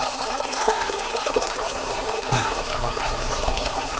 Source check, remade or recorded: remade